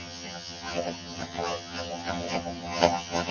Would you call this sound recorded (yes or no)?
no